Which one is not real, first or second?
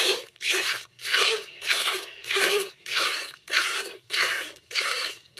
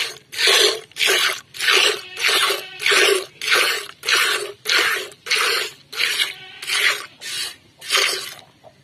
first